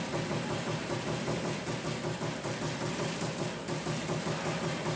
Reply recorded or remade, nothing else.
remade